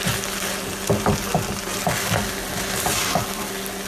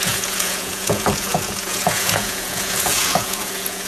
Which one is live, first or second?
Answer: first